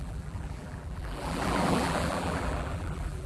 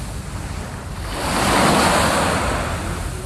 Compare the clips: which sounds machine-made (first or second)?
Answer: first